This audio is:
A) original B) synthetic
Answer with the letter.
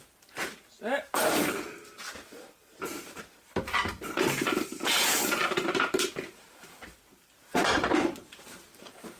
B